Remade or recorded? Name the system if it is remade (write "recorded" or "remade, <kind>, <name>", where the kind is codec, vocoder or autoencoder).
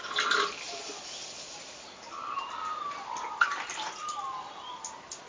recorded